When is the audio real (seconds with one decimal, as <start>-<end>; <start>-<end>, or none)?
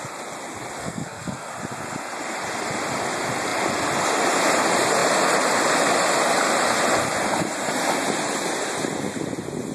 0.0-0.8; 1.5-9.7